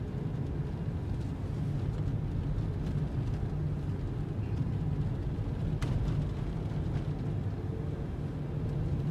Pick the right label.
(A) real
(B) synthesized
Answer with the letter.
A